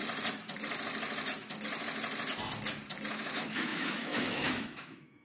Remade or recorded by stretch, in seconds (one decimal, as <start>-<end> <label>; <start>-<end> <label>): 0.0-3.1 recorded; 3.1-5.2 remade